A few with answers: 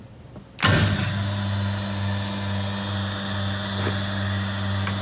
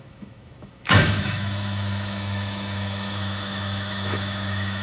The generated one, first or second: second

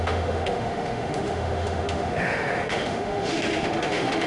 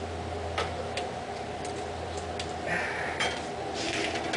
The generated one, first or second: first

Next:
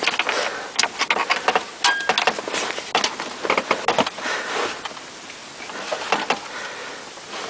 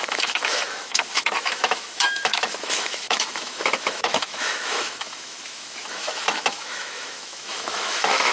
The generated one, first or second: second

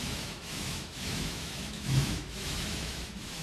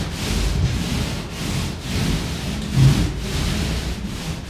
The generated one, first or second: first